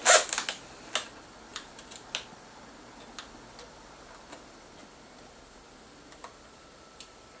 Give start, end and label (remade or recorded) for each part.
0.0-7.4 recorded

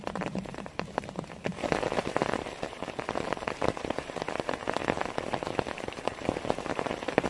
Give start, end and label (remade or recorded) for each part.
0.0-4.8 remade; 4.8-5.8 recorded; 5.8-7.3 remade

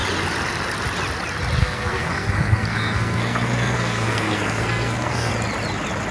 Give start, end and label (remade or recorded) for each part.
0.0-1.6 recorded; 1.6-5.3 remade; 5.3-6.1 recorded

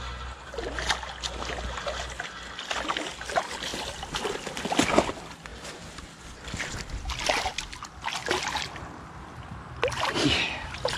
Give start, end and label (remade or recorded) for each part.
0.0-11.0 recorded